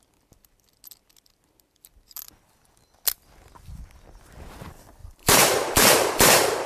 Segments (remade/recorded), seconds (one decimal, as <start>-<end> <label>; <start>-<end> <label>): 0.0-5.0 recorded; 5.0-6.7 remade